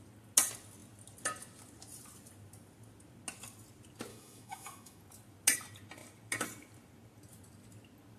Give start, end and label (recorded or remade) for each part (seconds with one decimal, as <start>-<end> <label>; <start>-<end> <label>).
0.0-4.1 recorded; 4.1-5.0 remade; 5.0-8.2 recorded